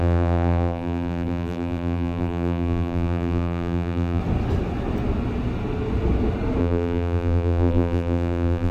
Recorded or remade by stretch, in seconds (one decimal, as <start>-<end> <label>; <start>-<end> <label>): 0.0-4.2 remade; 4.2-6.6 recorded; 6.6-8.7 remade